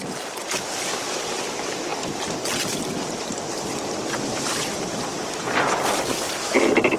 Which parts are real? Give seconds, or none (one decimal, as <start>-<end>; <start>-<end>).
0.0-7.0